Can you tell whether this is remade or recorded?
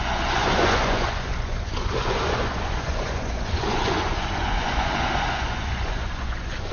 remade